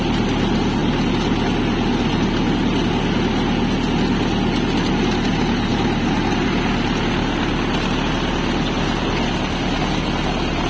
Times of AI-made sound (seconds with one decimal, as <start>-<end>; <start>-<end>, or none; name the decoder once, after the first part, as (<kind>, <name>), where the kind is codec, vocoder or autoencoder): none